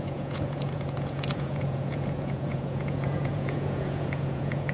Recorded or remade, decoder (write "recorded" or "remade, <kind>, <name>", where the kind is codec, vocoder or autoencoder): remade, vocoder, Vocos